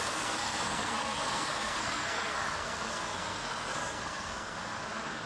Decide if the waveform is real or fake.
fake